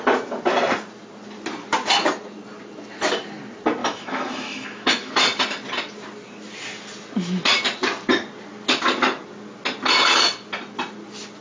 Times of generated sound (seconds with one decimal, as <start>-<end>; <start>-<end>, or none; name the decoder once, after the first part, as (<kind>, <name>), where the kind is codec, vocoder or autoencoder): 3.8-5.1 (autoencoder, DAC-VAE)